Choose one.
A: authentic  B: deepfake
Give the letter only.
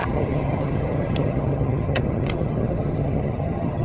B